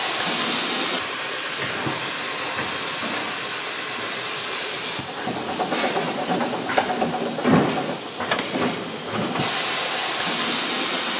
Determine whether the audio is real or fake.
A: real